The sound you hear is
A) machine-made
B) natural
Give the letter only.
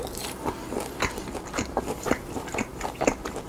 A